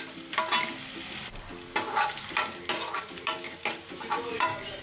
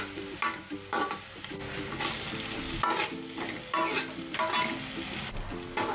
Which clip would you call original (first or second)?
second